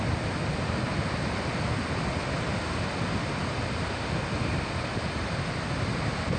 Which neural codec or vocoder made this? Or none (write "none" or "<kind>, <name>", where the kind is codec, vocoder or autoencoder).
none